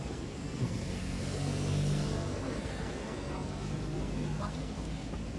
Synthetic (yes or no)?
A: yes